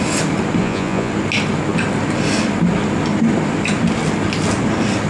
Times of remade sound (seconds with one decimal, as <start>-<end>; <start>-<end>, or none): 0.6-1.1